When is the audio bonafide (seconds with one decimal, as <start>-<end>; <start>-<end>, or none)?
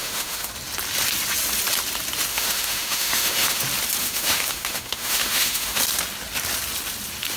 0.5-2.3; 3.6-4.0; 5.8-7.4